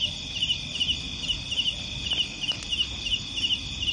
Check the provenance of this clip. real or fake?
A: real